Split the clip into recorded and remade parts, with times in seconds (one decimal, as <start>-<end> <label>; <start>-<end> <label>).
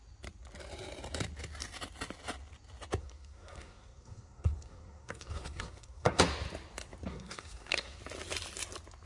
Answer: 0.0-3.0 recorded; 3.0-6.2 remade; 6.2-7.1 recorded; 7.1-8.0 remade; 8.0-9.1 recorded